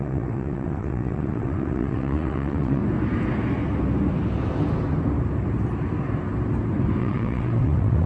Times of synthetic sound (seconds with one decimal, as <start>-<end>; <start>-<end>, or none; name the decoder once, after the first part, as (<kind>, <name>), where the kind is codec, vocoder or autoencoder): 0.0-2.8 (vocoder, WaveNeXt); 7.0-8.1